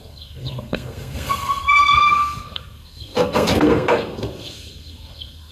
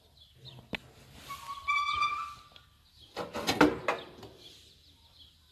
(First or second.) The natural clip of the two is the second